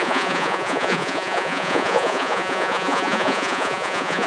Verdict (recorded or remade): remade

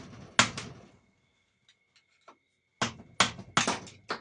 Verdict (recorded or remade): recorded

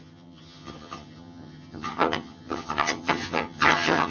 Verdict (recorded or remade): remade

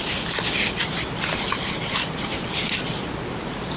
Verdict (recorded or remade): recorded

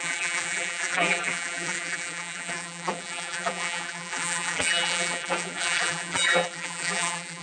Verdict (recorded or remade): remade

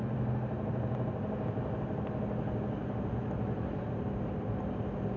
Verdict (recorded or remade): recorded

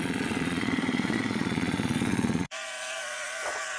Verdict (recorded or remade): remade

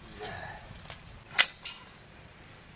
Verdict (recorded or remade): remade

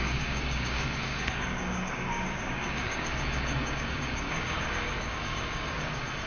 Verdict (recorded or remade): remade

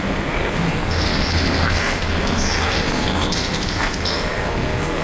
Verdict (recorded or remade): remade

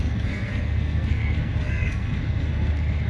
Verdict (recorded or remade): remade